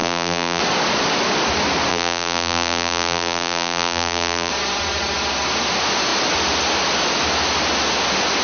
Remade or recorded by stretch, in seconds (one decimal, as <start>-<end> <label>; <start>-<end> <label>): 0.0-0.6 remade; 0.6-1.9 recorded; 1.9-4.5 remade; 4.5-8.4 recorded